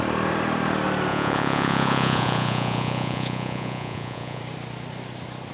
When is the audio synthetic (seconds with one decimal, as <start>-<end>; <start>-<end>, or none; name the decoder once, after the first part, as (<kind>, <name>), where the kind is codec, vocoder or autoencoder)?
1.1-4.4 (vocoder, Vocos)